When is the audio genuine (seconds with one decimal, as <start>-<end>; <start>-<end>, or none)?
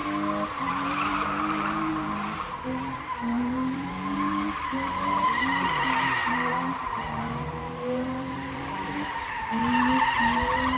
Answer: 0.0-0.5